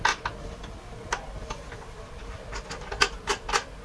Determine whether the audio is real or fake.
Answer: real